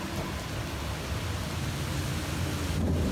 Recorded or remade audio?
recorded